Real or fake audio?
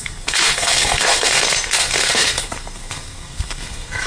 fake